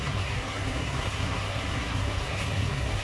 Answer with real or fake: fake